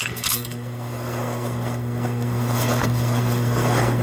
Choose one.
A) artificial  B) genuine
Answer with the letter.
A